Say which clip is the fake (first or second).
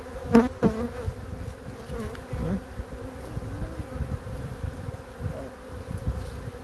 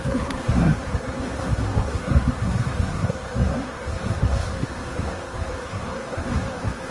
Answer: second